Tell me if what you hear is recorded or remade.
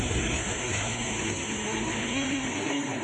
remade